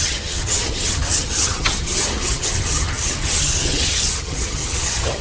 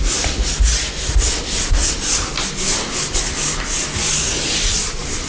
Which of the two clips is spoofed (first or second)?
first